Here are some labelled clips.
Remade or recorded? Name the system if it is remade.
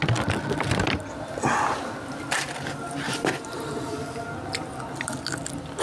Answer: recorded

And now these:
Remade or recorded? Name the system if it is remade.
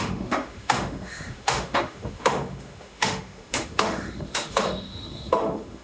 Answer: remade, autoencoder, DAC-VAE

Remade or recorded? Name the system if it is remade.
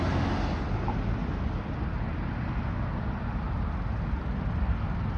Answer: recorded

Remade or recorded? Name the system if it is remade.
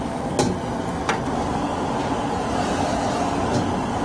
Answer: recorded